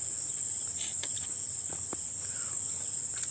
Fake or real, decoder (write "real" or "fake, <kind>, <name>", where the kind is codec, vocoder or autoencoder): real